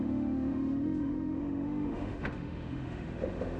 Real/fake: fake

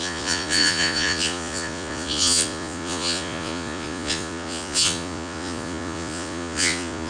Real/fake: fake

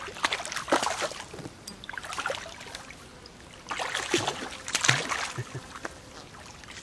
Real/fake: real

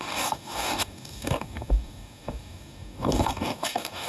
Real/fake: fake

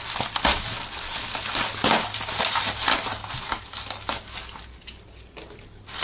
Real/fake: real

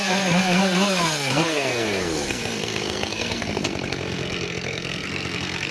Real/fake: fake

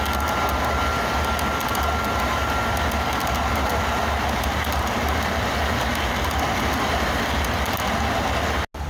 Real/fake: real